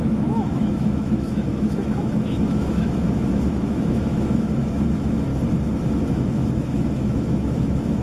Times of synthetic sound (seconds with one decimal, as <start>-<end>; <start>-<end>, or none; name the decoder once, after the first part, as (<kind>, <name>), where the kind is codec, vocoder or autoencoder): 0.0-5.3 (autoencoder, DAC-VAE); 6.1-8.0